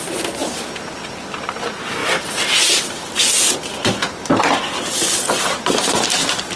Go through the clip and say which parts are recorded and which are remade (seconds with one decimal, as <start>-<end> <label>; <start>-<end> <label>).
0.0-6.6 recorded